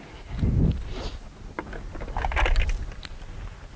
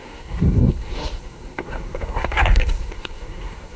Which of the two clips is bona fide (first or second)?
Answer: first